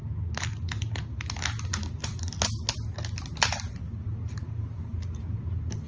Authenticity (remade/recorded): recorded